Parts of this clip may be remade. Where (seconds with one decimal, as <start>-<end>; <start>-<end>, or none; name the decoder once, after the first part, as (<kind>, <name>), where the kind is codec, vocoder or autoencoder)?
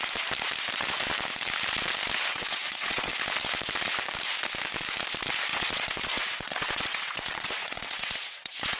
2.3-3.1 (vocoder, WaveNeXt); 5.5-8.8